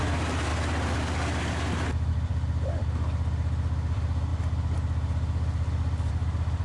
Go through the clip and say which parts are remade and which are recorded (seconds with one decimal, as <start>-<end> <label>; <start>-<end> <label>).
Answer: 0.0-6.6 recorded